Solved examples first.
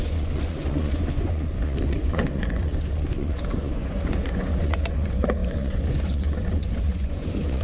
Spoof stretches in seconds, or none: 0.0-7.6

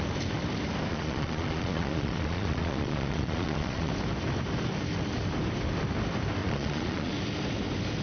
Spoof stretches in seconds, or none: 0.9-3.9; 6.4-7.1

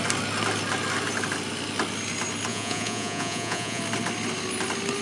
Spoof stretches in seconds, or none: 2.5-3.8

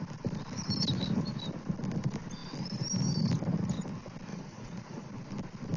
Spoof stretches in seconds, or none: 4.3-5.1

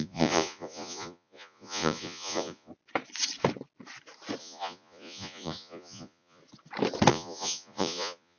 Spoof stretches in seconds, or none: 0.0-2.7; 4.4-6.4; 7.1-8.4